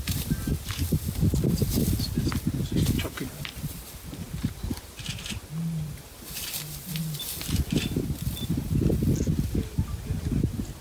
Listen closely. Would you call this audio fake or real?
real